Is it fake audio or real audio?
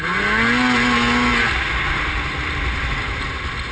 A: real